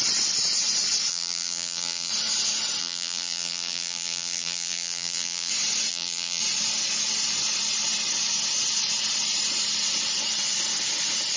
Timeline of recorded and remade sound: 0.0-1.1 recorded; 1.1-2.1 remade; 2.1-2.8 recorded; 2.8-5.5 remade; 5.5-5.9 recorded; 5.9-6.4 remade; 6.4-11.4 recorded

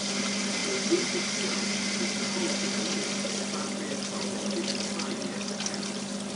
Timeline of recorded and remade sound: 0.0-6.4 recorded

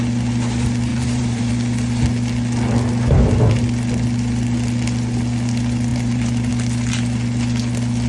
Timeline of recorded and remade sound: 0.0-0.9 recorded; 0.9-1.5 remade; 1.5-5.9 recorded; 5.9-6.5 remade; 6.5-8.1 recorded

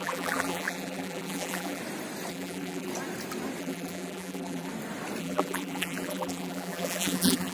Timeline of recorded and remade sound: 0.0-1.8 remade; 1.8-2.3 recorded; 2.3-2.9 remade; 2.9-3.6 recorded; 3.6-4.7 remade; 4.7-5.2 recorded; 5.2-7.5 remade

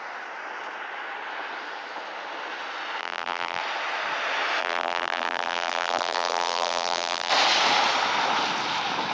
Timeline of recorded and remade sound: 0.0-3.0 recorded; 3.0-3.6 remade; 3.6-4.6 recorded; 4.6-7.3 remade; 7.3-9.1 recorded

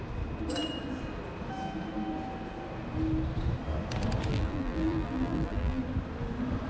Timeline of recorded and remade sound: 0.0-4.3 recorded; 4.3-5.8 remade; 5.8-6.7 recorded

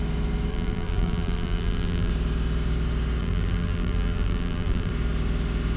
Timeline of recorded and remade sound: 0.0-0.5 recorded; 0.5-2.1 remade; 2.1-3.2 recorded; 3.2-4.9 remade; 4.9-5.8 recorded